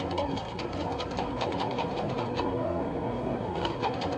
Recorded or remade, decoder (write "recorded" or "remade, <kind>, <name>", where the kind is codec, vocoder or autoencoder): remade, codec, SNAC